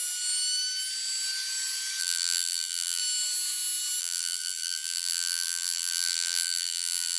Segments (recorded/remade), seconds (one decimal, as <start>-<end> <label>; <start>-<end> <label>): 0.0-2.0 recorded; 2.0-3.0 remade; 3.0-4.0 recorded; 4.0-7.2 remade